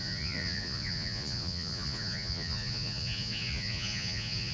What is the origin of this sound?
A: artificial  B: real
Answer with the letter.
A